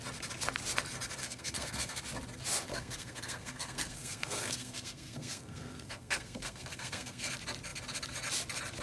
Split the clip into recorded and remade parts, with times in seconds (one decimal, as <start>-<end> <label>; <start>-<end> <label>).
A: 0.0-1.2 recorded; 1.2-2.0 remade; 2.0-2.7 recorded; 2.7-7.3 remade; 7.3-8.8 recorded